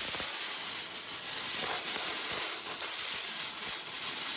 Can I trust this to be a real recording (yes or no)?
yes